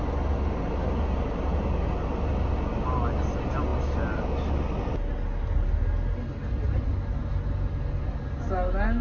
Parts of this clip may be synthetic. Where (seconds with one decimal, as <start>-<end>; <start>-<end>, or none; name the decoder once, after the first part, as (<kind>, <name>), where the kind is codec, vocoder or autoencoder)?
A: none